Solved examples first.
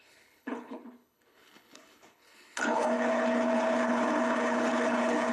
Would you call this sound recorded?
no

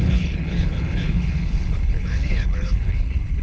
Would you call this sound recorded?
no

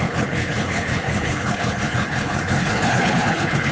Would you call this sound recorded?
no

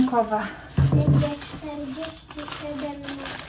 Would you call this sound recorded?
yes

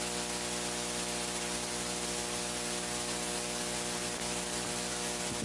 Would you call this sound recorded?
yes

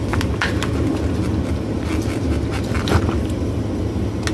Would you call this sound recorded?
yes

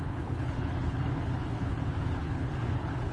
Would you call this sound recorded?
no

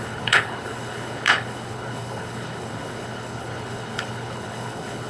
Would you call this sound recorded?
no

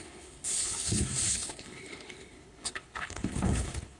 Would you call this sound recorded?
no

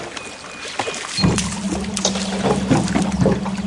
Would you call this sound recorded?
yes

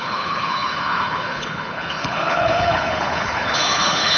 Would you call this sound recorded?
no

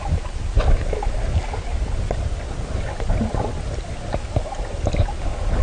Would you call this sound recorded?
yes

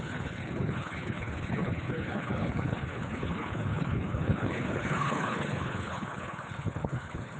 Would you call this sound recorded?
no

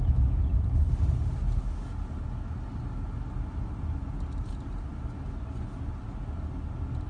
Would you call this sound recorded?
yes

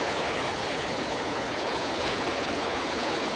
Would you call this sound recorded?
no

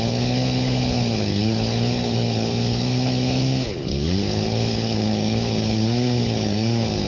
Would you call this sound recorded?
no